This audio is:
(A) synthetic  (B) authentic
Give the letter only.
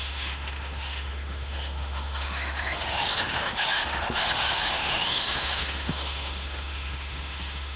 A